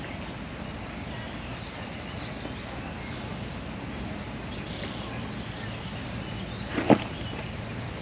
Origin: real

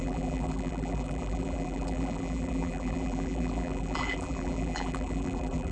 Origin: fake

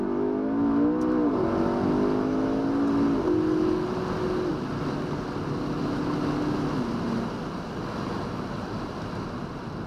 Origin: real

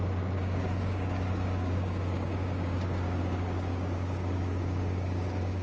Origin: fake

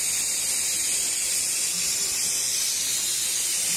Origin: real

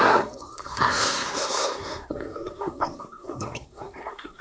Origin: fake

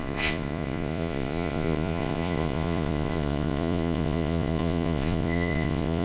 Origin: fake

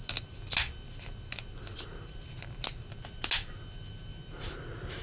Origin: real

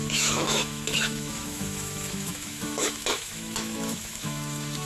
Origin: fake